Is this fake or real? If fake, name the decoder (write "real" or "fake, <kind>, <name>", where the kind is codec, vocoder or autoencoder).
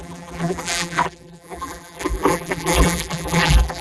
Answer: fake, vocoder, BigVGAN v2